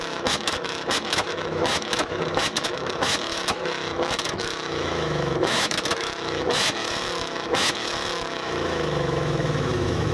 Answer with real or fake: fake